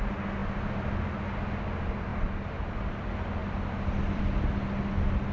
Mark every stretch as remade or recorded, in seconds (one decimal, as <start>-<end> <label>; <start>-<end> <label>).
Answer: 0.0-2.1 recorded; 2.1-2.8 remade; 2.8-3.4 recorded; 3.4-4.2 remade; 4.2-5.3 recorded